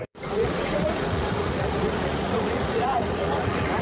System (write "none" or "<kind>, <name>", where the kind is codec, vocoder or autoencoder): vocoder, Vocos